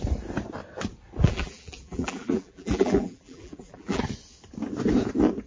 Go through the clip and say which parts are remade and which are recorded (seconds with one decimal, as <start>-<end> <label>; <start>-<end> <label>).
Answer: 0.0-1.2 recorded; 1.2-4.0 remade; 4.0-5.5 recorded